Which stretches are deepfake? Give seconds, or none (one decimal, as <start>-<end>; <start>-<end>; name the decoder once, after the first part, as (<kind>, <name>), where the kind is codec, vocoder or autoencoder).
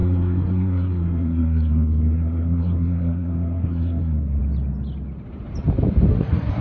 0.0-4.4 (codec, SNAC); 6.1-6.6